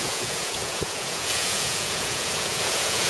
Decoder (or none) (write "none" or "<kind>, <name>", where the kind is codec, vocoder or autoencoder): vocoder, Vocos